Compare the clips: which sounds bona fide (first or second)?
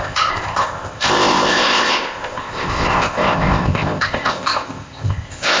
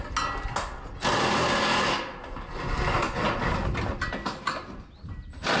second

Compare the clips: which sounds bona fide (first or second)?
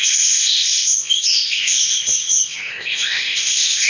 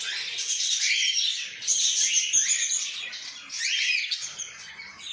second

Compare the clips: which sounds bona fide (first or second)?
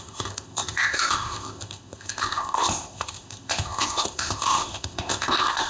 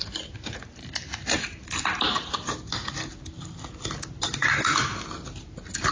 second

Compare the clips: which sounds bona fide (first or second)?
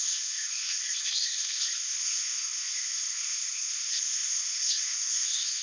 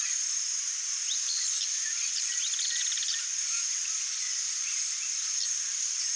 second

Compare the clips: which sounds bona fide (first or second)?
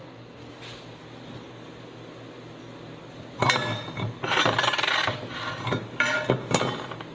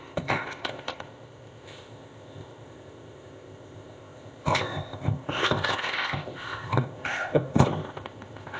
first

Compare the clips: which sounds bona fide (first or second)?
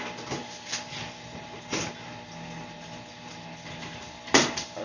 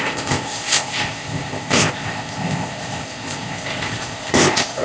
first